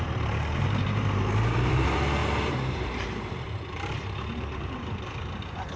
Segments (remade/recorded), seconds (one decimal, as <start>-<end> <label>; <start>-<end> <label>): 0.0-5.8 remade